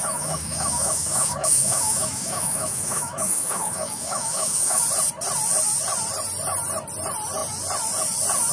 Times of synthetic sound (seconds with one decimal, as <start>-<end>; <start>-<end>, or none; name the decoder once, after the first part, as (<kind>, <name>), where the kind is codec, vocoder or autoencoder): 0.0-4.8 (autoencoder, DAC-VAE)